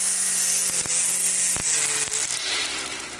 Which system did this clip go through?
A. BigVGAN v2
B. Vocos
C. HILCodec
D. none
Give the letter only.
D